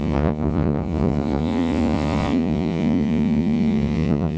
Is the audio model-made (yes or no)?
yes